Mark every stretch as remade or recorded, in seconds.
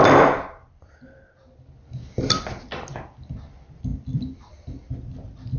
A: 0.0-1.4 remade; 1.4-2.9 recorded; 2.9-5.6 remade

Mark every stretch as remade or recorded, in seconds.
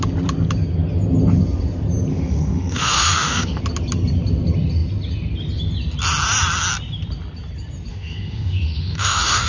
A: 0.0-2.1 recorded; 2.1-3.6 remade; 3.6-7.9 recorded; 7.9-9.5 remade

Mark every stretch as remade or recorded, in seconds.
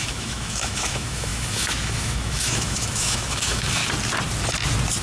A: 0.0-3.8 remade; 3.8-5.0 recorded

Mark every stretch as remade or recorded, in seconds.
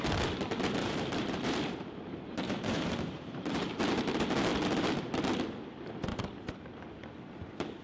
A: 0.0-0.8 recorded; 0.8-3.8 remade; 3.8-6.1 recorded; 6.1-6.6 remade; 6.6-7.8 recorded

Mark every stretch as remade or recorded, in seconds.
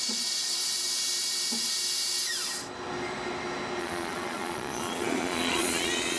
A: 0.0-0.6 remade; 0.6-3.8 recorded; 3.8-6.2 remade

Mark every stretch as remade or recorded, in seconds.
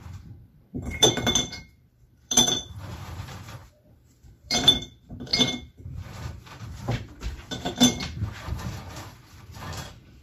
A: 0.0-10.2 remade